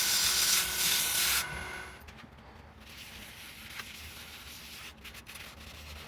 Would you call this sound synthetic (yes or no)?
no